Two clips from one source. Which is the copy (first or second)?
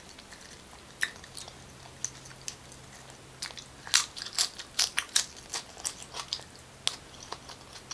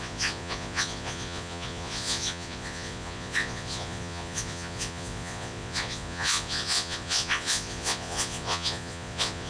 second